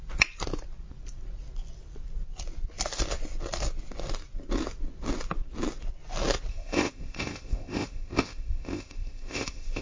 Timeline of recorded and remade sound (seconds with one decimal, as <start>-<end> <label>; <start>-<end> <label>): 0.0-6.5 recorded; 6.5-9.8 remade